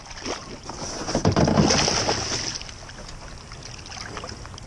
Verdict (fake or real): real